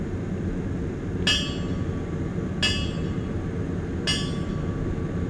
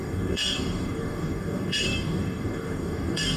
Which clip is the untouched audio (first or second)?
first